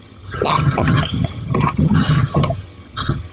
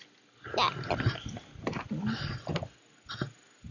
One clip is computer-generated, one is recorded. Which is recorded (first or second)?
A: second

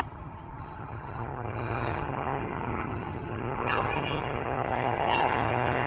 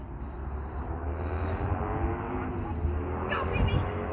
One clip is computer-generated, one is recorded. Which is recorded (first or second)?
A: second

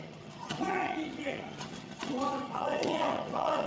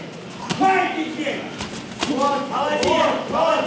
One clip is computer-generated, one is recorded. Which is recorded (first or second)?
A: second